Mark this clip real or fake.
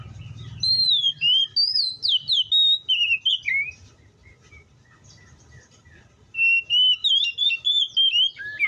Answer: real